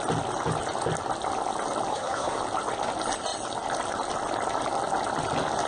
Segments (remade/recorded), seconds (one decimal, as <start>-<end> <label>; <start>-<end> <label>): 0.0-1.9 recorded; 1.9-2.4 remade; 2.4-5.7 recorded